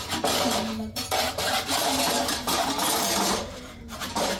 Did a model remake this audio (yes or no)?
yes